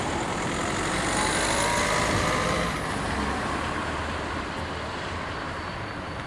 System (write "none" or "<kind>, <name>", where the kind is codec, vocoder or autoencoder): vocoder, BigVGAN v2